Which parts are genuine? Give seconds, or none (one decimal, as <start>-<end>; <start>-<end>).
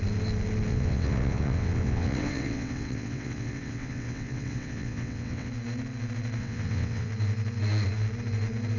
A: 0.0-0.7; 5.5-6.4; 7.1-8.8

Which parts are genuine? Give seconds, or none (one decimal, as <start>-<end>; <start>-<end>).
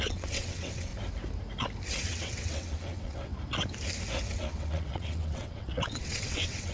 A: 0.9-1.9; 3.3-4.3